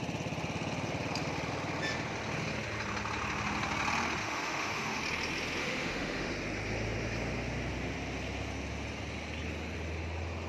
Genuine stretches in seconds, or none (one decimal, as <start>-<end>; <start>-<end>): 0.0-4.2; 5.0-5.6; 6.3-10.5